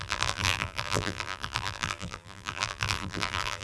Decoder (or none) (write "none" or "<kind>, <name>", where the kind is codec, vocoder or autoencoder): vocoder, BigVGAN v2